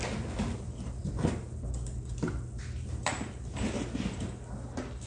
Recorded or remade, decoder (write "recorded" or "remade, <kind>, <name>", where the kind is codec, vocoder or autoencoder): recorded